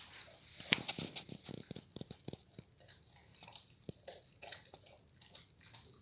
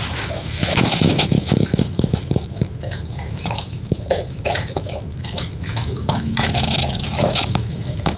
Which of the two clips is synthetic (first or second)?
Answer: second